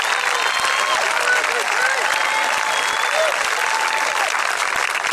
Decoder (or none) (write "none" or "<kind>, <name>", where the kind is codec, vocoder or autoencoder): none